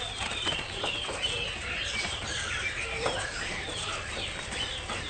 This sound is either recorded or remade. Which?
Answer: remade